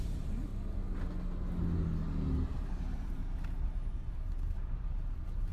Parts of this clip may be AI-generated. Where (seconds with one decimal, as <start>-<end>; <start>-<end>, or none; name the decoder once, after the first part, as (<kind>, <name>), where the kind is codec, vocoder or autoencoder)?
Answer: 0.0-0.5 (vocoder, BigVGAN v2); 2.5-3.2; 3.9-5.5